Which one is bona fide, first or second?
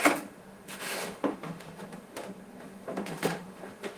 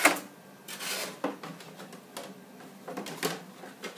second